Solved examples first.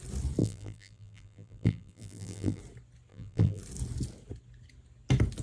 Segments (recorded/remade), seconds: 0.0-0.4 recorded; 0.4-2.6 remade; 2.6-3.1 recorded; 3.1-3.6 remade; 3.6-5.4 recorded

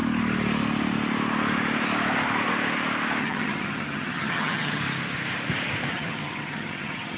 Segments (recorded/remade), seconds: 0.0-3.2 recorded; 3.2-4.8 remade; 4.8-5.9 recorded; 5.9-7.2 remade

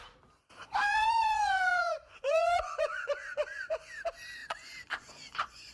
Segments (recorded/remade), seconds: 0.0-0.6 recorded; 0.6-4.0 remade; 4.0-4.4 recorded; 4.4-5.7 remade